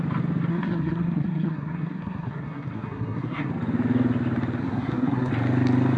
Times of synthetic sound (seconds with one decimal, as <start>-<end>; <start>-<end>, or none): 0.5-3.5; 4.6-5.3